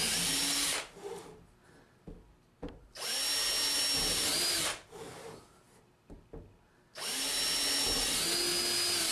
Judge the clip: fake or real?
real